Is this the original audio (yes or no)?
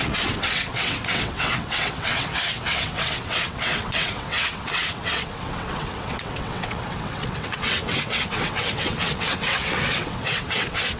no